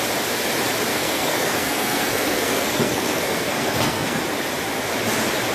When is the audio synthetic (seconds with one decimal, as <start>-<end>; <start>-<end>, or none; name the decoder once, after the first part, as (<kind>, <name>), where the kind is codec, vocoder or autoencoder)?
0.9-4.2 (codec, SNAC)